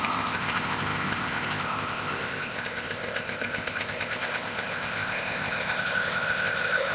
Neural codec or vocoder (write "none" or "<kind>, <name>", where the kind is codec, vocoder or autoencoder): codec, ZipCodec